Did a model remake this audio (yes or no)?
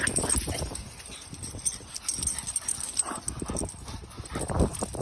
no